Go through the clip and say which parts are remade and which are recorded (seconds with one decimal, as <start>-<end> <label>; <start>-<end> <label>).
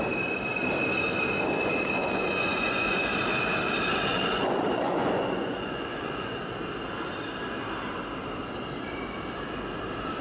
0.0-2.0 recorded; 2.0-3.1 remade; 3.1-4.1 recorded; 4.1-6.4 remade; 6.4-10.2 recorded